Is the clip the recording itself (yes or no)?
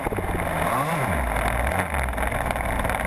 yes